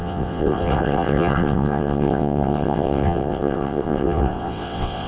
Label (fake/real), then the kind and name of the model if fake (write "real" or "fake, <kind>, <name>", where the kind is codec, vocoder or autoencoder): fake, vocoder, WaveNeXt